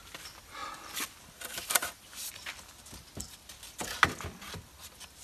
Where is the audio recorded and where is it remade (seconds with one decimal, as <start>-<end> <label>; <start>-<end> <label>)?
0.0-1.8 recorded; 1.8-2.3 remade; 2.3-5.2 recorded